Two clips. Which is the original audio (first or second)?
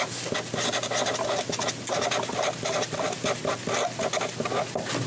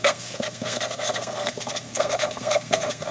first